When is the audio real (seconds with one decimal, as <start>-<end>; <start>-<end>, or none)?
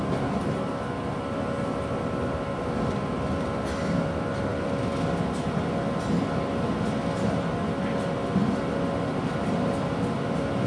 0.0-10.7